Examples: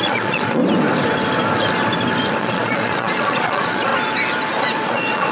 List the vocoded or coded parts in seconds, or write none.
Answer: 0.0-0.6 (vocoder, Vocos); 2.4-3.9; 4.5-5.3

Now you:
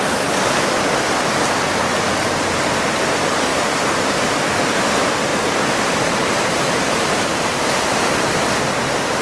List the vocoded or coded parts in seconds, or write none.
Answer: 3.5-4.3 (vocoder, BigVGAN v2); 5.3-9.2

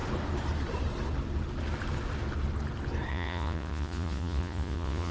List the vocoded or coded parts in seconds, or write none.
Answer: 3.1-5.1 (vocoder, Vocos)

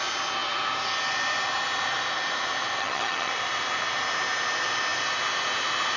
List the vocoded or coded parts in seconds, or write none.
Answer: 2.8-3.3 (vocoder, HiFi-GAN)